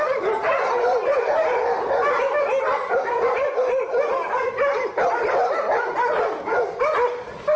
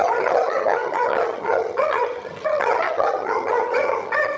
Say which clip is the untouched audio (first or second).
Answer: first